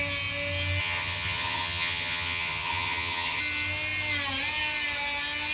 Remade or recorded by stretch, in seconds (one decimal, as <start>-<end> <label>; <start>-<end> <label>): 0.0-0.8 recorded; 0.8-3.4 remade; 3.4-5.5 recorded